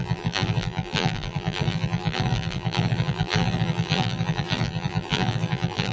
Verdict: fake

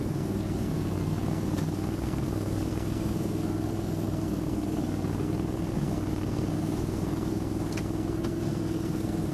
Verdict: fake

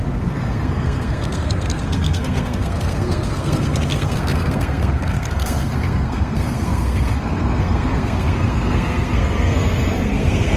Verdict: fake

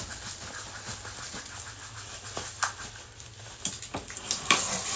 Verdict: real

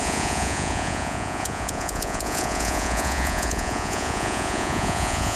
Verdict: fake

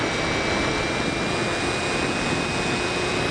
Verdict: real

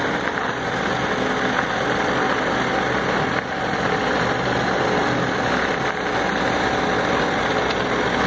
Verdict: real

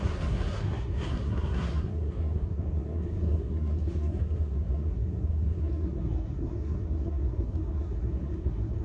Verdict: fake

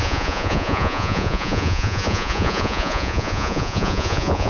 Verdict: fake